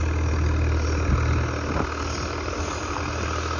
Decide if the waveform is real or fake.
real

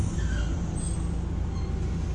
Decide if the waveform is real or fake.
real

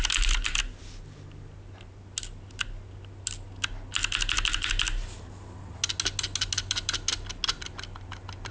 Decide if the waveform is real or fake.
real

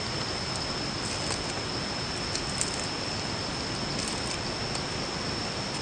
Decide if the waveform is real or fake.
real